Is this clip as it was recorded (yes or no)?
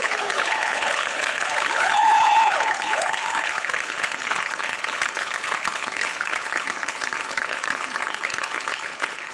no